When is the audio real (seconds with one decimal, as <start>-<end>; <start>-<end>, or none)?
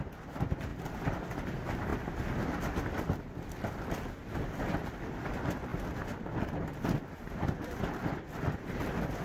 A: 0.0-0.7; 1.2-4.2; 5.3-9.2